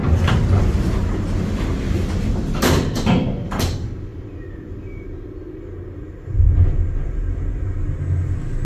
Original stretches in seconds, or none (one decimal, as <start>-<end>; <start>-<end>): 0.0-8.6